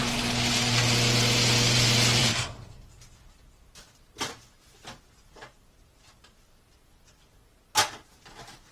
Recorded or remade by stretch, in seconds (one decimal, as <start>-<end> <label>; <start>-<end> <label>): 0.0-2.2 recorded; 2.2-7.1 remade; 7.1-8.7 recorded